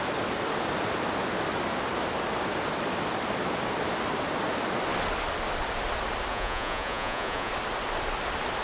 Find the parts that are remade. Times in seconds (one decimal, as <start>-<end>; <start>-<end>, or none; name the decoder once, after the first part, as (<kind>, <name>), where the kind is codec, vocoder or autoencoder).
6.3-7.5 (vocoder, Vocos)